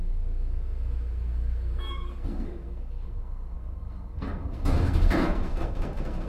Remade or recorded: remade